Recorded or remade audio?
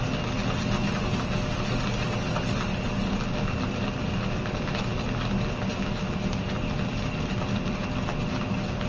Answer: recorded